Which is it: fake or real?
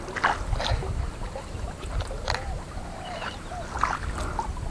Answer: real